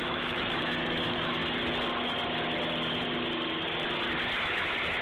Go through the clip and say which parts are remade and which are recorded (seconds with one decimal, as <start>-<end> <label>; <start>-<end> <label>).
0.0-1.4 remade; 1.4-4.4 recorded; 4.4-5.0 remade